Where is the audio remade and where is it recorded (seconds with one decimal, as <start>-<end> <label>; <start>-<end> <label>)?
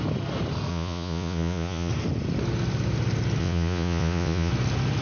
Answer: 0.0-0.7 recorded; 0.7-1.9 remade; 1.9-3.4 recorded; 3.4-4.5 remade; 4.5-5.0 recorded